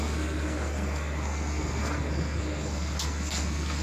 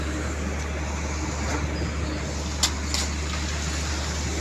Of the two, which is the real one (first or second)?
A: second